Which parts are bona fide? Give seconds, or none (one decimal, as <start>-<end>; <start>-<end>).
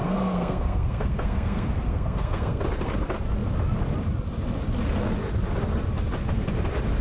2.6-7.0